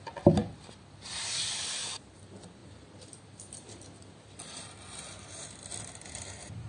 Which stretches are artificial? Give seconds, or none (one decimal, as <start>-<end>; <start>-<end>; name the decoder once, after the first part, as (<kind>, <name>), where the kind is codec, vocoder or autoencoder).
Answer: 0.4-2.2 (vocoder, BigVGAN v2); 2.6-5.8